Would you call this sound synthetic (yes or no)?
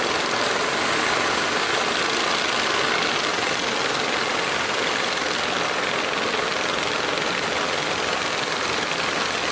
no